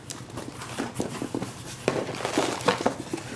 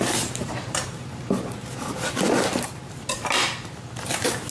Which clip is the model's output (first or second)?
second